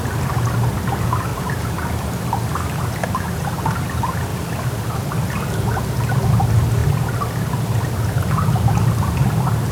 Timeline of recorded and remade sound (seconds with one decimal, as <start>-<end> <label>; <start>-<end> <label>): 0.0-1.3 recorded; 1.3-1.9 remade; 1.9-4.3 recorded; 4.3-4.8 remade; 4.8-9.7 recorded